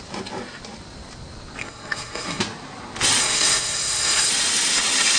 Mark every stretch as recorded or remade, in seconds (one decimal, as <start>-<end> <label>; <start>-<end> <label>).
0.0-1.6 recorded; 1.6-2.4 remade; 2.4-3.2 recorded; 3.2-4.3 remade; 4.3-5.2 recorded